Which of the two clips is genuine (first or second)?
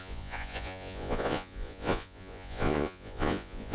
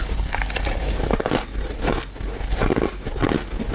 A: second